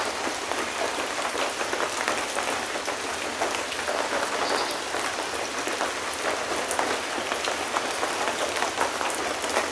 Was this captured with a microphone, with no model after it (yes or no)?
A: yes